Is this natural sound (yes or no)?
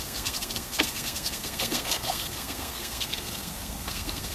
no